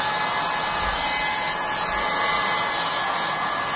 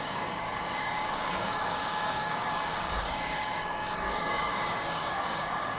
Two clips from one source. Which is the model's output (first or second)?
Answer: second